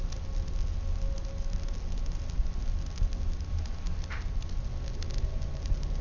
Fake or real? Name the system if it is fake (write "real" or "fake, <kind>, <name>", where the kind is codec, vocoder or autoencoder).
real